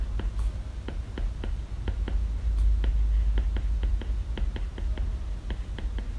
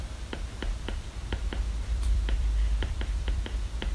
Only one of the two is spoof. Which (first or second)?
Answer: second